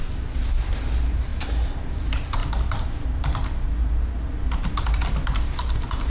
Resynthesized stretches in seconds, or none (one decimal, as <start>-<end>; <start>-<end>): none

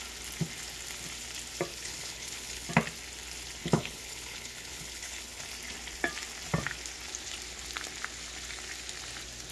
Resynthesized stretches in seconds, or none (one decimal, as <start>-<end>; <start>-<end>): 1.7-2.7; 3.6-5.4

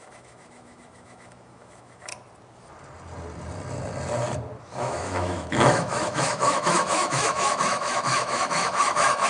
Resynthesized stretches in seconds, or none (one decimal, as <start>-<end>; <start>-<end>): 0.0-2.1; 4.6-9.3

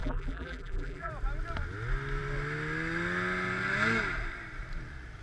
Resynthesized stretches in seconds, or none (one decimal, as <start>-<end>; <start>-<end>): 0.0-1.1